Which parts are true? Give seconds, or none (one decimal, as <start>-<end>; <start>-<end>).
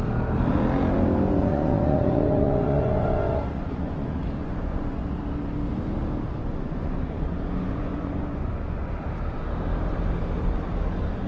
0.0-1.4; 5.2-6.4; 8.9-11.3